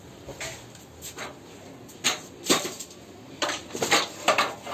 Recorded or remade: recorded